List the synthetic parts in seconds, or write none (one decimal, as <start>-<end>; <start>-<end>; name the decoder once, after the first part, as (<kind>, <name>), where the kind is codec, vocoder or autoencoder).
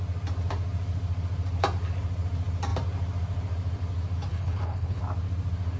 4.3-5.0 (codec, HILCodec)